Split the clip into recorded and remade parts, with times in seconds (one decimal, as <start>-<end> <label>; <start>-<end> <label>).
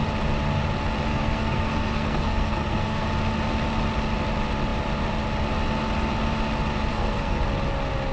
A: 0.0-1.1 recorded; 1.1-3.1 remade; 3.1-6.9 recorded; 6.9-7.4 remade; 7.4-8.1 recorded